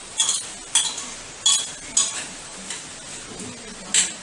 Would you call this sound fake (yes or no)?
no